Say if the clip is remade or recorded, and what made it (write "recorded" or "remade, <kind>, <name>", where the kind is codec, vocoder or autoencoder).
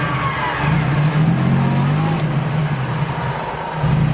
recorded